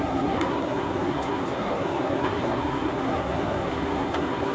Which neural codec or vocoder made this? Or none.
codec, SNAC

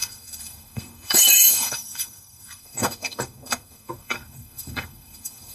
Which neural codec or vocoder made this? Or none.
codec, SNAC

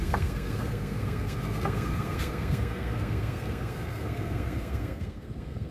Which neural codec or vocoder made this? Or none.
codec, SNAC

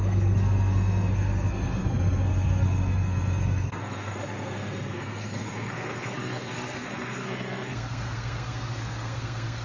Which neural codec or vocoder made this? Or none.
codec, SNAC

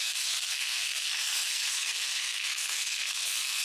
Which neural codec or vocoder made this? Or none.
codec, SNAC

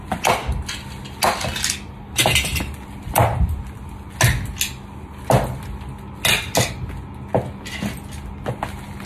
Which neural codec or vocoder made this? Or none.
none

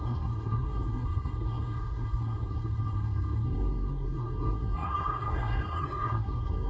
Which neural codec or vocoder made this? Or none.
codec, SNAC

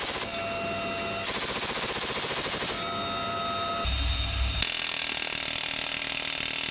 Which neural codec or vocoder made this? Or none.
none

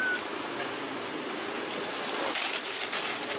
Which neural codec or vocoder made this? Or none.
none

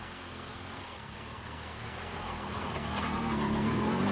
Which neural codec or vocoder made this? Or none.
codec, SNAC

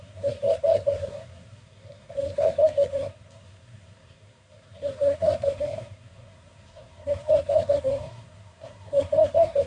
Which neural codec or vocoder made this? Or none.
codec, SNAC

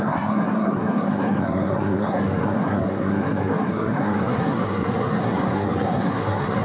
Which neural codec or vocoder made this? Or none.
codec, SNAC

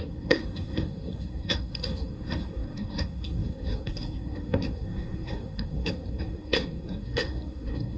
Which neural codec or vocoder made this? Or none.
codec, SNAC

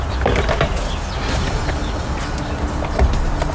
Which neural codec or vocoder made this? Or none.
none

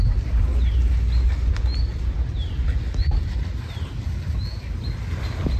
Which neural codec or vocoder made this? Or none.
none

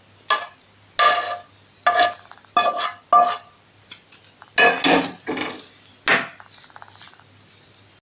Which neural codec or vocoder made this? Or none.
none